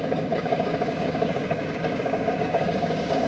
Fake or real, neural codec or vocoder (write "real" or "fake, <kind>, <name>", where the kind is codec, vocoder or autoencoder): fake, codec, DAC